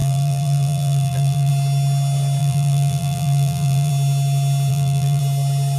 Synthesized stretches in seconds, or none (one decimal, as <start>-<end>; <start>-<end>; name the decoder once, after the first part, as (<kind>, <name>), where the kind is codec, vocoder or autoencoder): 0.0-1.5 (vocoder, BigVGAN v2); 2.4-3.9; 4.7-5.2